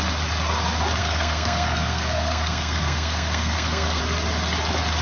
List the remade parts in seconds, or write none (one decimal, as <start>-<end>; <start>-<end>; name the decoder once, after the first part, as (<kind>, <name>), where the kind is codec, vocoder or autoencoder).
1.0-4.0 (codec, SNAC)